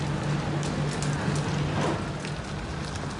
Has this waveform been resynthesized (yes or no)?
no